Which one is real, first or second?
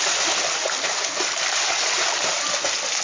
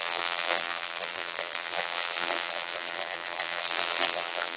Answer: first